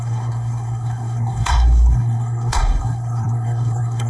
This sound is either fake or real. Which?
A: fake